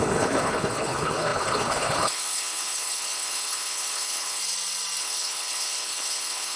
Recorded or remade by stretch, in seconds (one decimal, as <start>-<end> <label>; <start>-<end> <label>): 0.0-4.4 remade; 4.4-5.0 recorded; 5.0-6.6 remade